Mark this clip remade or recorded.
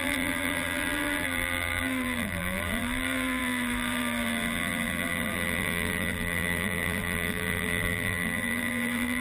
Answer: remade